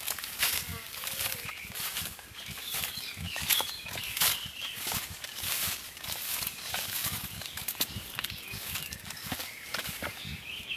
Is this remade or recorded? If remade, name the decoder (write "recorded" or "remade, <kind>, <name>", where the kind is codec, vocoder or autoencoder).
remade, codec, DAC